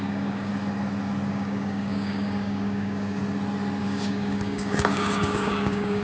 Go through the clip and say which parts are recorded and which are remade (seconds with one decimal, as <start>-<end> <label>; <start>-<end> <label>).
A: 0.0-0.5 remade; 0.5-1.3 recorded; 1.3-3.2 remade; 3.2-3.8 recorded; 3.8-6.0 remade